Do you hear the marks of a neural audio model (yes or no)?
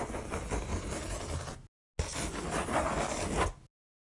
no